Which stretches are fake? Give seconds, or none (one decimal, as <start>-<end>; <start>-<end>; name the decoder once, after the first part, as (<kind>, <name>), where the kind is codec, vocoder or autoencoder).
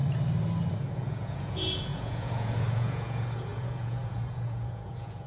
0.9-5.3 (vocoder, Vocos)